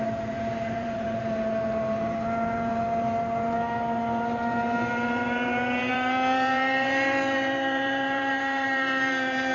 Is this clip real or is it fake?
fake